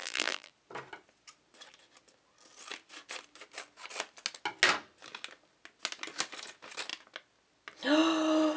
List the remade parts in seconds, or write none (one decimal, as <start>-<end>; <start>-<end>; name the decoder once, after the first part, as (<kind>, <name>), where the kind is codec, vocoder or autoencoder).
0.0-0.5 (vocoder, BigVGAN v2)